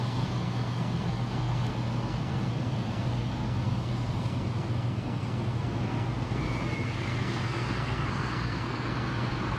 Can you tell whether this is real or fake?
fake